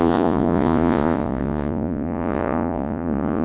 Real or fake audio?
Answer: fake